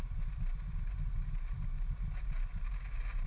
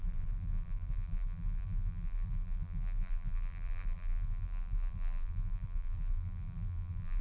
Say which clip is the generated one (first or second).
second